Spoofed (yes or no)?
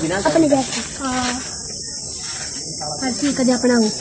no